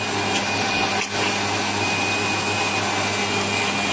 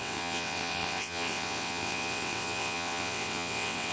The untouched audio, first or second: first